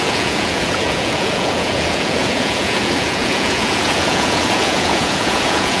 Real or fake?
fake